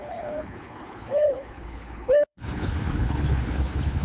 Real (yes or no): no